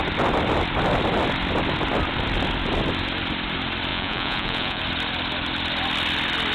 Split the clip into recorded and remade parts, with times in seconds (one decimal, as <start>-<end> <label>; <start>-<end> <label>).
0.0-3.9 recorded; 3.9-4.8 remade; 4.8-6.5 recorded